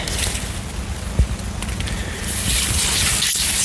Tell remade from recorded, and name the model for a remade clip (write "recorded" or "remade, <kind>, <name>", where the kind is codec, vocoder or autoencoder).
recorded